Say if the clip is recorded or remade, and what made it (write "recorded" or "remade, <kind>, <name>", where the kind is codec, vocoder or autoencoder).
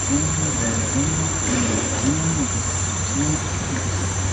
recorded